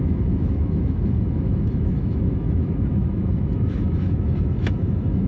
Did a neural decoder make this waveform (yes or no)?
yes